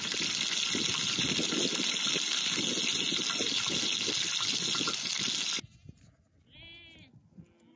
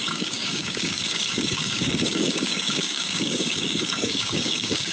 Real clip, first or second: first